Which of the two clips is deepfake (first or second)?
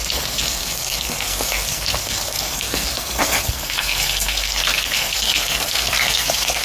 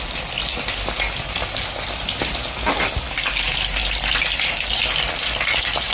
first